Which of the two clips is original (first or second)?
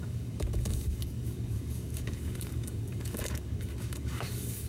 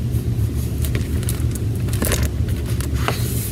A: second